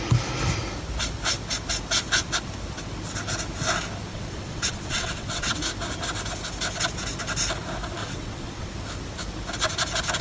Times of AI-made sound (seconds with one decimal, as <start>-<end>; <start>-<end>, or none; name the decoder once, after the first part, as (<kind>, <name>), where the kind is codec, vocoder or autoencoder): 4.1-5.6 (vocoder, WaveNeXt); 8.0-8.7